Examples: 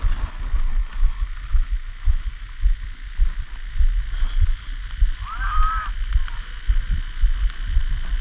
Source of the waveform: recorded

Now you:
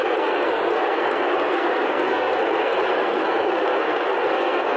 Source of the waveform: remade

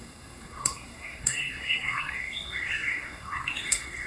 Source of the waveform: remade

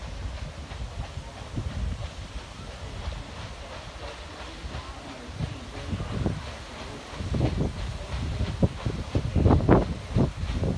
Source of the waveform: recorded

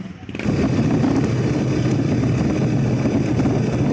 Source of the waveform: recorded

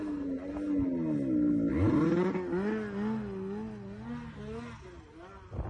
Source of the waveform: recorded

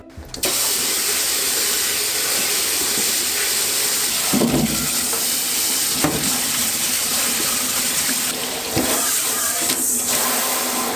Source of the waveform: recorded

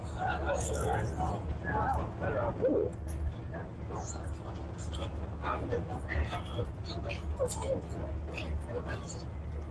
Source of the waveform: recorded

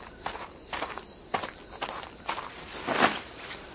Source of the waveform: recorded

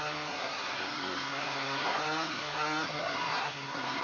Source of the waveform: remade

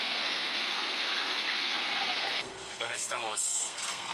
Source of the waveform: remade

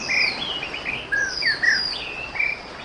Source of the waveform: recorded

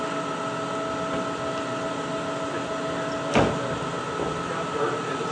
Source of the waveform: recorded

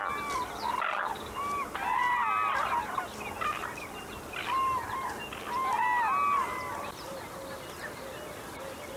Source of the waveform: recorded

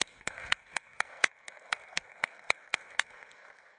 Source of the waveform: remade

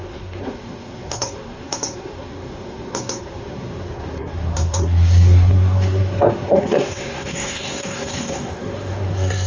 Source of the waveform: remade